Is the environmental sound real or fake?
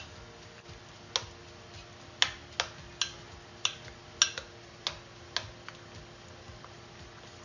real